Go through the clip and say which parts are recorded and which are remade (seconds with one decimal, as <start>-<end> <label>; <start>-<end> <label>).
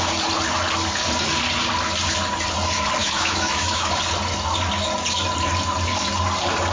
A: 0.0-3.0 recorded; 3.0-3.9 remade; 3.9-6.7 recorded